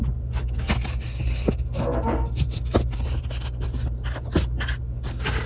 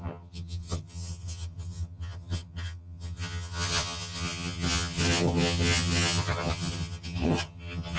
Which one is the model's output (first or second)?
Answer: second